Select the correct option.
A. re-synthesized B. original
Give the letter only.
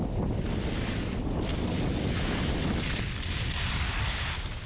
B